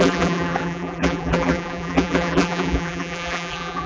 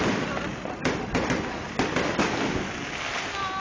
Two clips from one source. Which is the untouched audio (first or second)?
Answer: second